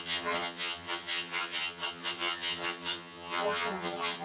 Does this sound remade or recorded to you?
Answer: remade